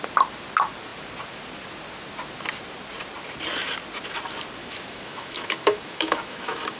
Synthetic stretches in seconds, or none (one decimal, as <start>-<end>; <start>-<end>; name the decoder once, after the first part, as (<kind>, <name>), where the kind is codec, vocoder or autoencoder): 4.6-6.8 (autoencoder, DAC-VAE)